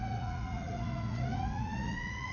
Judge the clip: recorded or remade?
remade